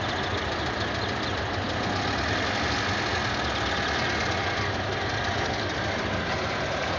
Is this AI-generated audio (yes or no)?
no